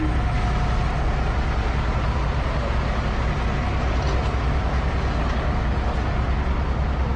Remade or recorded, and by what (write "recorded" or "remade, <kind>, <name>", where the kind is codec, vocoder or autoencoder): recorded